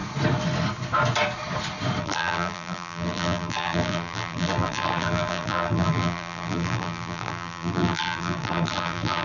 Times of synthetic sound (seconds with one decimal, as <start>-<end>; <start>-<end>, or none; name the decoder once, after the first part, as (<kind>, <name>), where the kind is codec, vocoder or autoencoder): 2.0-9.2 (vocoder, BigVGAN v2)